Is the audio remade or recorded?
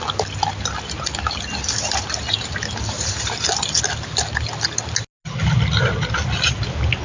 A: recorded